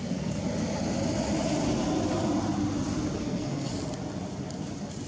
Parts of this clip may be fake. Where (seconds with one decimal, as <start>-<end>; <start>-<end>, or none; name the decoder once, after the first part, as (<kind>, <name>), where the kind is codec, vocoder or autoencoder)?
0.0-0.4 (codec, SNAC); 3.2-3.7